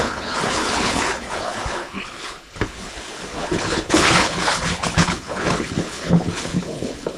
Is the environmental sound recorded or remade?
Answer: remade